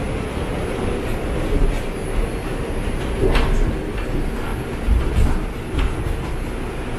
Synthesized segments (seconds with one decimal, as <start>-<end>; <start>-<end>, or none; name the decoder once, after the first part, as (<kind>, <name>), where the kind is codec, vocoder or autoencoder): none